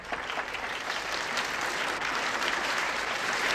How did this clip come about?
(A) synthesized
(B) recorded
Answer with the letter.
A